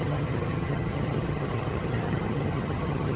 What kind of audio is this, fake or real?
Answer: fake